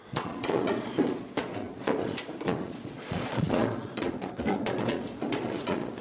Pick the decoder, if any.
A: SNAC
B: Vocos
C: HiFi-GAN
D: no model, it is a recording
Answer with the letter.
B